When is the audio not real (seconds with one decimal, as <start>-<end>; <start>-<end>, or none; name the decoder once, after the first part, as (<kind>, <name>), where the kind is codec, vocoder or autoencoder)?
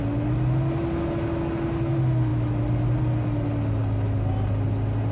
none